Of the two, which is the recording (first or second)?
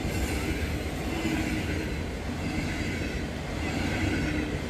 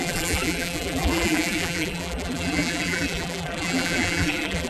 first